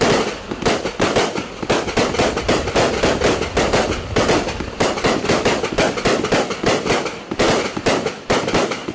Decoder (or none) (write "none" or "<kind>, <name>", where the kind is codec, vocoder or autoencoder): none